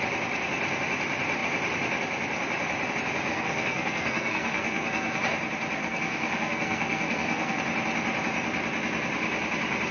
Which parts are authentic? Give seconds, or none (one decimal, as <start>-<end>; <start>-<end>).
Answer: 0.0-3.3; 5.2-5.8; 7.6-9.9